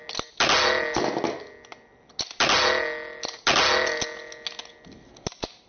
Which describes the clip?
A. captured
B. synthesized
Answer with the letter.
A